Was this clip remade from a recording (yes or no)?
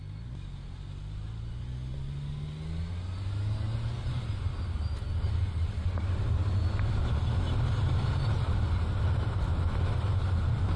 no